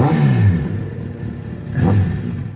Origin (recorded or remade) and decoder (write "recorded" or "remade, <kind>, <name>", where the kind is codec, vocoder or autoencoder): recorded